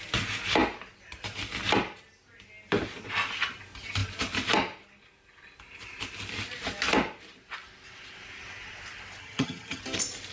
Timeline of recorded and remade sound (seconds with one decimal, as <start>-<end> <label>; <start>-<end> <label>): 0.0-9.2 recorded; 9.2-9.8 remade; 9.8-10.3 recorded